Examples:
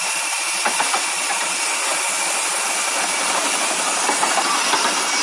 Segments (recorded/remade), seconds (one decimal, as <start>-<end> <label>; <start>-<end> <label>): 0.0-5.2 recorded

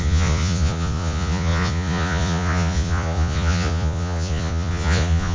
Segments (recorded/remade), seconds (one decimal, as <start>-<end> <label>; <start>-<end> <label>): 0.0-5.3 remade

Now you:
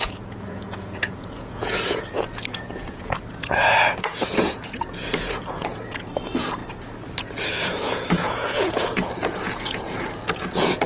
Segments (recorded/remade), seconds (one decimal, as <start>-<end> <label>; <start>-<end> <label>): 0.0-6.6 remade; 6.6-7.2 recorded; 7.2-10.9 remade

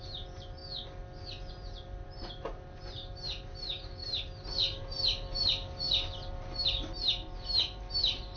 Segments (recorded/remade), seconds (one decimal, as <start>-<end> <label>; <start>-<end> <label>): 0.0-0.6 remade; 0.6-1.5 recorded; 1.5-8.4 remade

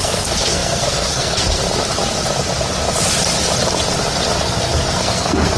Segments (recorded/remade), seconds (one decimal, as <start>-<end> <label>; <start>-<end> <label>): 0.0-1.6 remade; 1.6-4.4 recorded; 4.4-5.6 remade

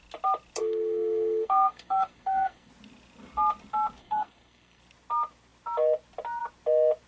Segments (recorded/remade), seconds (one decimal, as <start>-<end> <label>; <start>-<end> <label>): 0.0-0.6 recorded; 0.6-2.7 remade; 2.7-4.0 recorded; 4.0-4.8 remade; 4.8-7.1 recorded

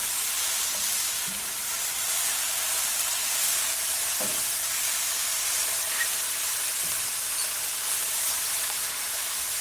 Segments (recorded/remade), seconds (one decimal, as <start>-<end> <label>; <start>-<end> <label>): 0.0-9.6 remade